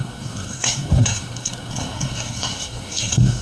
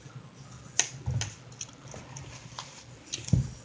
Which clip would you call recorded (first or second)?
second